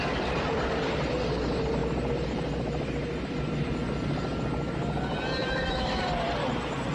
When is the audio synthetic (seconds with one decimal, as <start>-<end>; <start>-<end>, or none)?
5.4-6.0